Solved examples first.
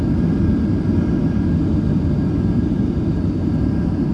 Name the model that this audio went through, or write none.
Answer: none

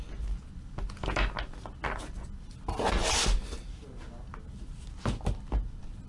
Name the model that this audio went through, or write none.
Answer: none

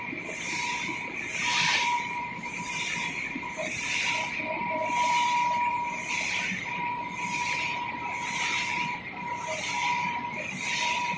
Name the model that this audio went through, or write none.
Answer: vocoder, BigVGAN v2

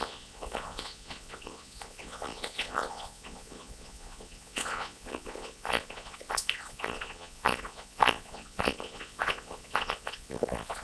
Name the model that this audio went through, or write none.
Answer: vocoder, Vocos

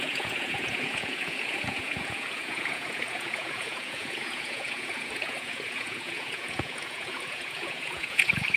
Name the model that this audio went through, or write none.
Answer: vocoder, Vocos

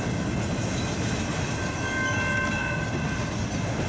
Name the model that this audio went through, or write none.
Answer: none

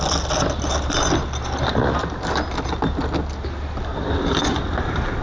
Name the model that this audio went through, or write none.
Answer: none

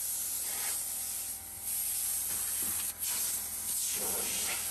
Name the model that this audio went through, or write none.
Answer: none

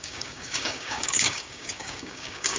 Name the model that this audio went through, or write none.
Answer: codec, DAC